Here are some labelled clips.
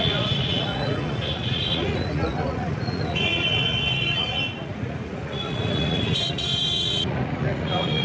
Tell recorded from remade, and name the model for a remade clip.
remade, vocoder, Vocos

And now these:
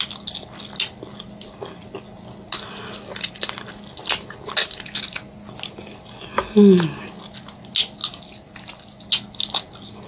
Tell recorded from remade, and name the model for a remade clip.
recorded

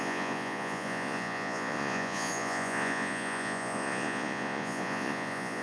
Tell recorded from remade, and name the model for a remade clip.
remade, vocoder, Vocos